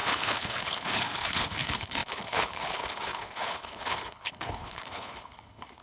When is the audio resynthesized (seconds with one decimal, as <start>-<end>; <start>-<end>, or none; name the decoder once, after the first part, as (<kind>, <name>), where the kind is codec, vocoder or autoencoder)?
0.0-5.8 (codec, HILCodec)